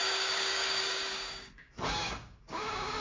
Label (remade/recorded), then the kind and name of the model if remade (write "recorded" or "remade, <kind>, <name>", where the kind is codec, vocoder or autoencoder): remade, codec, DAC